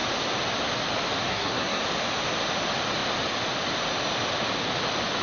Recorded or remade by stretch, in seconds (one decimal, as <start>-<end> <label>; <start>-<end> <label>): 0.0-1.3 recorded; 1.3-1.8 remade; 1.8-5.2 recorded